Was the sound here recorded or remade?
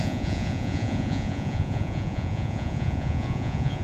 remade